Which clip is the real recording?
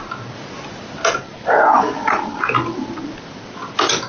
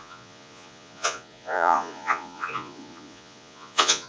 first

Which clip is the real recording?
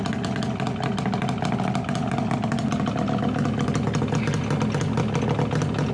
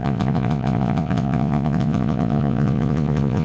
first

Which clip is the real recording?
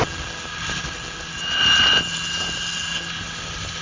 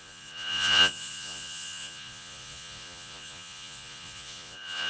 first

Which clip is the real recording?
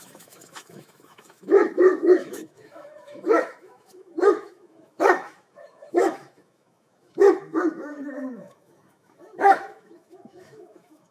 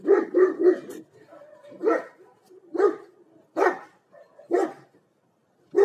second